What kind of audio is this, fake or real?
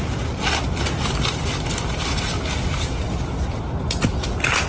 real